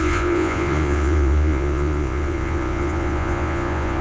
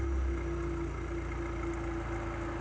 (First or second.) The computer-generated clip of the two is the first